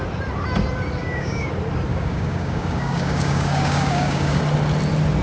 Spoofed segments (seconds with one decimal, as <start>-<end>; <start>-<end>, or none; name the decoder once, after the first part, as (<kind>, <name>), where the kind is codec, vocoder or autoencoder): 1.0-1.5 (codec, DAC); 1.9-4.4